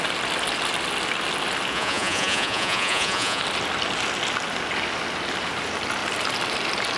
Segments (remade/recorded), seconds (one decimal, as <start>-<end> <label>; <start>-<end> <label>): 0.0-1.7 recorded; 1.7-3.4 remade; 3.4-7.0 recorded